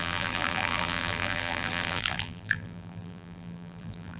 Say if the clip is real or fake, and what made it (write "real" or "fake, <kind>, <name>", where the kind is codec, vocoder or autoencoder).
fake, vocoder, BigVGAN v2